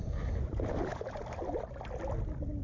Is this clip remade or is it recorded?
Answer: recorded